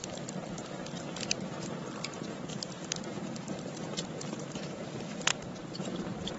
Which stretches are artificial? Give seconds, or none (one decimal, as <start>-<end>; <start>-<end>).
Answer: 0.0-5.3; 5.8-6.4